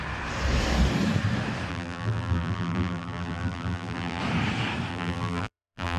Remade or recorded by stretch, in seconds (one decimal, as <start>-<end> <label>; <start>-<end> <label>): 0.0-1.7 recorded; 1.7-4.2 remade; 4.2-4.9 recorded; 4.9-6.0 remade